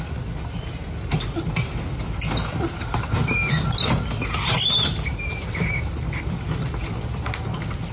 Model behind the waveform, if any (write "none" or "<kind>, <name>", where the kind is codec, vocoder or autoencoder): none